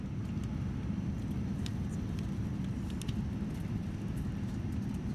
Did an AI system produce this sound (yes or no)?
no